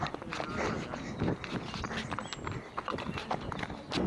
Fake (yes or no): no